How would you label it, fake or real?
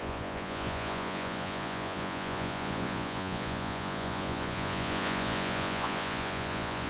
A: fake